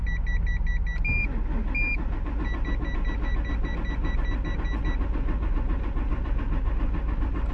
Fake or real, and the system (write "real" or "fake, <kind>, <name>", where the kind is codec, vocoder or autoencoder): real